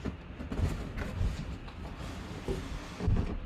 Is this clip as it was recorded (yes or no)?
yes